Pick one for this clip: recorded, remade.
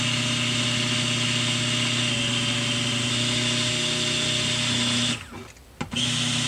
recorded